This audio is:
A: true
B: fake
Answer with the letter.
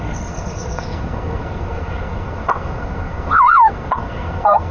B